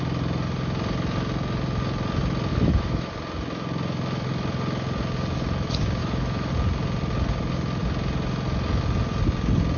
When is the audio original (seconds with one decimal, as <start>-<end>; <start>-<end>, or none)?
0.0-2.5; 3.1-6.0; 6.5-9.8